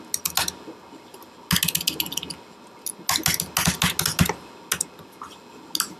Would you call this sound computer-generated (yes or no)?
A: no